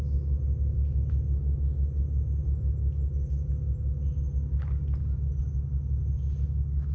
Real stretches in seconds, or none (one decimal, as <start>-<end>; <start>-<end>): 0.0-6.9